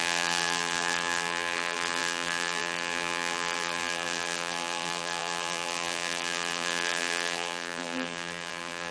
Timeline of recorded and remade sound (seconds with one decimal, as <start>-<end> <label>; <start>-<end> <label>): 0.0-8.9 remade